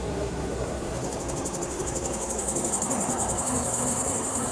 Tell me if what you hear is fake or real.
fake